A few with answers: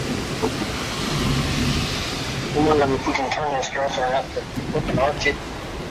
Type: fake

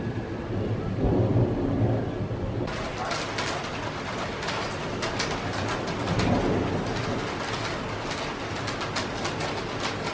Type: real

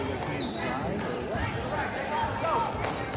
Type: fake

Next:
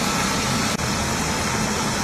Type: real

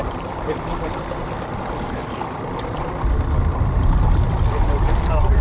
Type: real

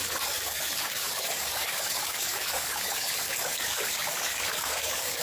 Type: fake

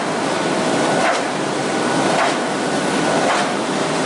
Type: real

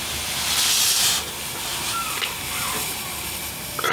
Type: real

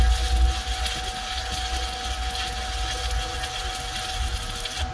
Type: real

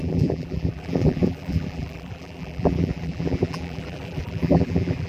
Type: fake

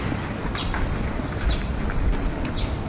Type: fake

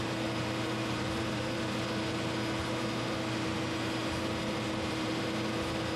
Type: real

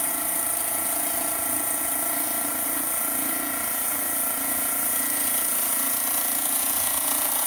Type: fake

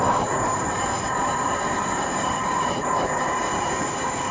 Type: fake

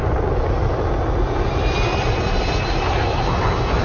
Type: real